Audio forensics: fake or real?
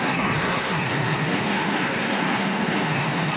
fake